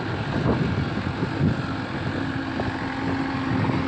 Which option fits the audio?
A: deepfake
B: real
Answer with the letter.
B